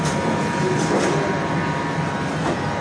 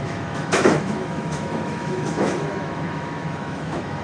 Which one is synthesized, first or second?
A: second